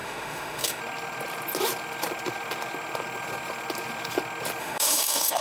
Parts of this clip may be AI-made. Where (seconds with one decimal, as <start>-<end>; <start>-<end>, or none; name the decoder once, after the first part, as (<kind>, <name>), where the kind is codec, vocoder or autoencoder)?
0.0-0.8 (autoencoder, DAC-VAE); 4.6-5.4